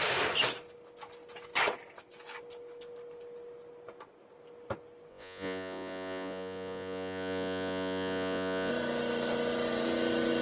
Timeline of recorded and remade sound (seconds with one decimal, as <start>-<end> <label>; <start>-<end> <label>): 0.0-5.1 recorded; 5.1-8.7 remade; 8.7-10.4 recorded